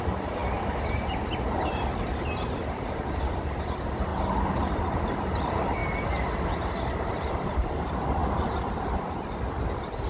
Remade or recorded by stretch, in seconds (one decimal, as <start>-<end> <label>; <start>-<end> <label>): 0.0-4.1 remade; 4.1-5.2 recorded; 5.2-5.8 remade; 5.8-7.0 recorded; 7.0-8.2 remade; 8.2-9.6 recorded; 9.6-10.1 remade